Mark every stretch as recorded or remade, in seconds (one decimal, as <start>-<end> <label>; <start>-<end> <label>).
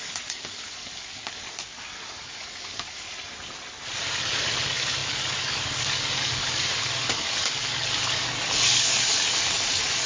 0.0-3.1 remade; 3.1-4.0 recorded; 4.0-10.1 remade